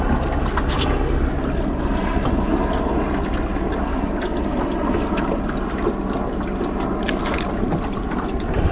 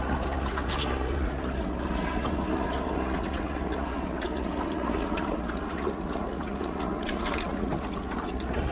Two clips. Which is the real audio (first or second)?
first